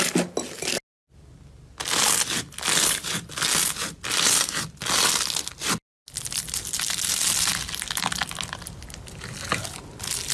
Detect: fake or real real